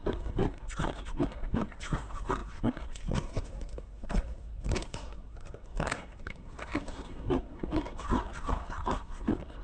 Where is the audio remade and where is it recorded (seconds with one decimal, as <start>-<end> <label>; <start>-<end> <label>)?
0.0-9.6 remade